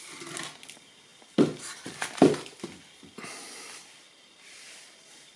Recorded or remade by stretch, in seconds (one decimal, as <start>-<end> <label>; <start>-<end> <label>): 0.0-5.4 recorded